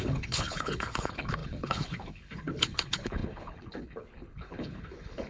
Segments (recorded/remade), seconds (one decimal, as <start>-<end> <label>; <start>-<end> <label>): 0.0-5.3 remade